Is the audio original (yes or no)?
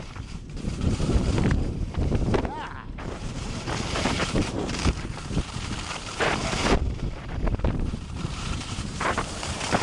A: no